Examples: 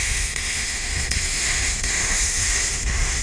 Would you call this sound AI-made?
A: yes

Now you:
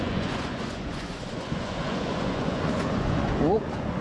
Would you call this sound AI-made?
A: yes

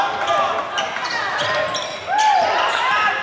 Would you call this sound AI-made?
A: no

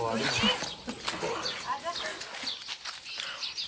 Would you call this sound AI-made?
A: no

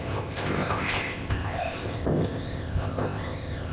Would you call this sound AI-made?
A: yes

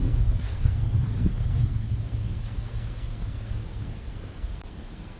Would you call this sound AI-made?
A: yes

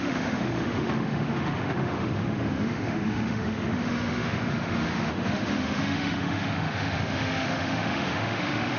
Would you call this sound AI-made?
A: yes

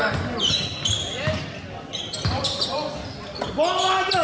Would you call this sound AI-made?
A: no